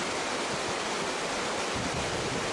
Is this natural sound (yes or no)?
yes